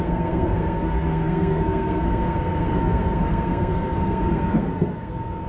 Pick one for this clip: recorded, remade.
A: remade